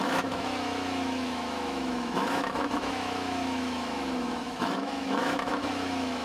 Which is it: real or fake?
fake